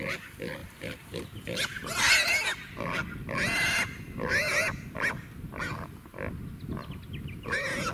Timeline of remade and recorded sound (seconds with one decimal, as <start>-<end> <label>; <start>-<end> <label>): 0.0-0.6 recorded; 0.6-1.2 remade; 1.2-7.9 recorded